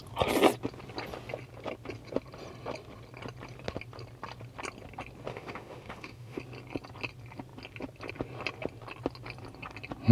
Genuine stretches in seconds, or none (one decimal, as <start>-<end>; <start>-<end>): 0.0-5.3; 6.4-10.1